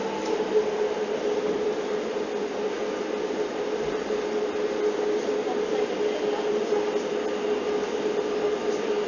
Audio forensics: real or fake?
real